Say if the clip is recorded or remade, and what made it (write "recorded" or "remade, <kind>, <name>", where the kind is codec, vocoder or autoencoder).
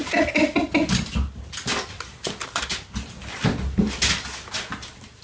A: recorded